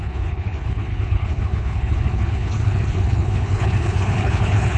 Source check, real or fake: fake